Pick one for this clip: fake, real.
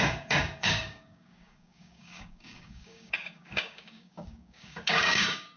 fake